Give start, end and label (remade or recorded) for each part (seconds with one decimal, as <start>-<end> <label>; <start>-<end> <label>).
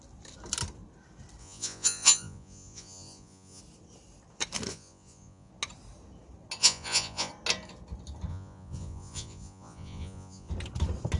0.0-1.4 recorded; 1.4-3.6 remade; 3.6-4.7 recorded; 4.7-5.5 remade; 5.5-6.6 recorded; 6.6-7.3 remade; 7.3-8.3 recorded; 8.3-10.5 remade; 10.5-11.2 recorded